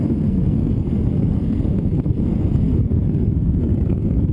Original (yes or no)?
no